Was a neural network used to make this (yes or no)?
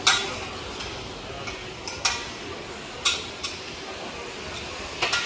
no